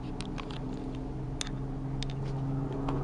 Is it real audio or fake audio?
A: real